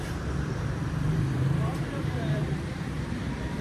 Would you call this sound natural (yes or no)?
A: no